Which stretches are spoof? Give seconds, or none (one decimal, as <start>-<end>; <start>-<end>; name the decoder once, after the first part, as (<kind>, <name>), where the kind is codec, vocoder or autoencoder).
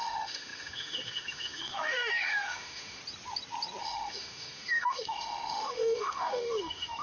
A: 0.0-3.0 (autoencoder, DAC-VAE); 3.8-7.0